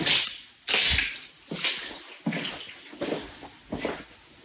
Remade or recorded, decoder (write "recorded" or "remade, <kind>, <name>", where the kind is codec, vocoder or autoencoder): recorded